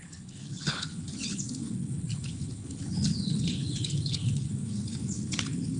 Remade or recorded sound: remade